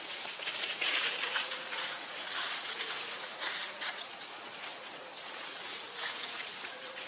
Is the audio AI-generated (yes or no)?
yes